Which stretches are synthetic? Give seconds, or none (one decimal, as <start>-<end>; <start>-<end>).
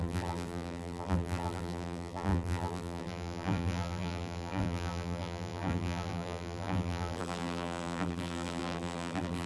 0.0-9.5